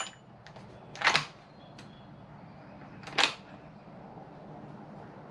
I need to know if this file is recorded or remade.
recorded